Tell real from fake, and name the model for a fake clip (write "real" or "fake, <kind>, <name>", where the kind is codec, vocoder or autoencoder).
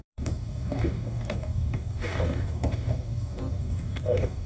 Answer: fake, codec, DAC